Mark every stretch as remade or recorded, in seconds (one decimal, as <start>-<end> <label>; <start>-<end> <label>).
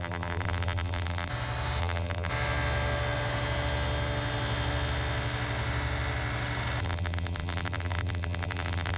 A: 0.0-1.3 remade; 1.3-1.8 recorded; 1.8-2.3 remade; 2.3-6.8 recorded; 6.8-9.0 remade